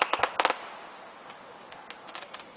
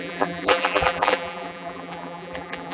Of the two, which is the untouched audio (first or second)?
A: first